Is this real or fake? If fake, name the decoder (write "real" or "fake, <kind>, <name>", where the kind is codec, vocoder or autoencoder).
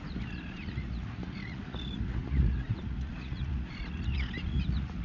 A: fake, vocoder, Vocos